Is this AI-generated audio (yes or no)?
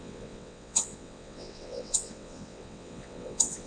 yes